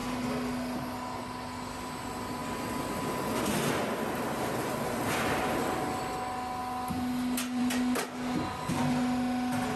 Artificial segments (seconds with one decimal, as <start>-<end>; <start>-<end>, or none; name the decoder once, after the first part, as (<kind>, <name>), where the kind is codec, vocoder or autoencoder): none